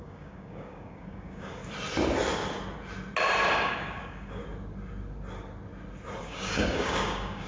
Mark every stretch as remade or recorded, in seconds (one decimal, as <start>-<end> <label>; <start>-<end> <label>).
0.0-1.6 remade; 1.6-3.5 recorded; 3.5-4.4 remade; 4.4-6.2 recorded; 6.2-7.5 remade